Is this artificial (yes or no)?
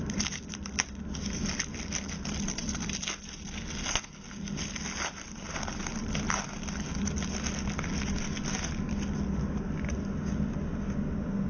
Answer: no